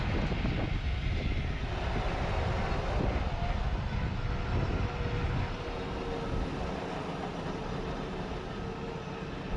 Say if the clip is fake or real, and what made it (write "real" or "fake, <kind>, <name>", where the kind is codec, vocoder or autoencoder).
real